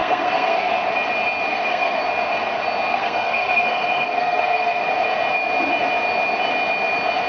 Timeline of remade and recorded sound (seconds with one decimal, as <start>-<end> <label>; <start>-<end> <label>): 0.0-0.7 remade; 0.7-1.5 recorded; 1.5-2.0 remade; 2.0-2.9 recorded; 2.9-4.9 remade; 4.9-7.3 recorded